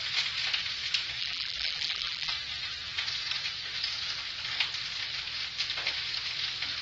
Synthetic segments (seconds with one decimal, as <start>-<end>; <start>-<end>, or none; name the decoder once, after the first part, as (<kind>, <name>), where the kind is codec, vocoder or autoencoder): 1.2-2.3 (vocoder, BigVGAN v2)